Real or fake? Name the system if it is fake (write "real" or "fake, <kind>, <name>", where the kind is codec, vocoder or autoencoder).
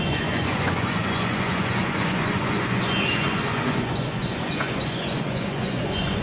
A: fake, vocoder, Vocos